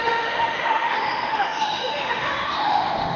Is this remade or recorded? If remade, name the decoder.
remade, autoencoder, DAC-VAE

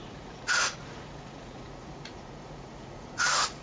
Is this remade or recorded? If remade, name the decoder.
remade, vocoder, Vocos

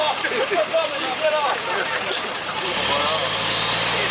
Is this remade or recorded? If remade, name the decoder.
recorded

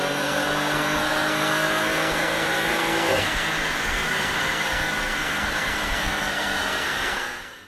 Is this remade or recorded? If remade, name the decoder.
remade, codec, SNAC